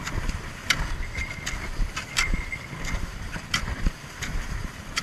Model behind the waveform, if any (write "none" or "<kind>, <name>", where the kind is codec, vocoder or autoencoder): none